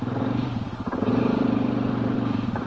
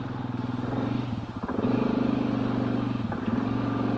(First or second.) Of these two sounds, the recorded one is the second